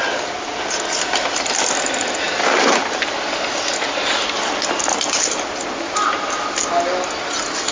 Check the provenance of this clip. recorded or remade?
recorded